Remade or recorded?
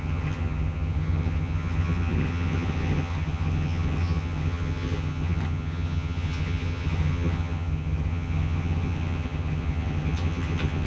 remade